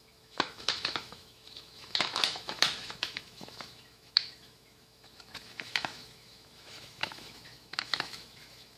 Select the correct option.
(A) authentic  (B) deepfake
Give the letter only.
B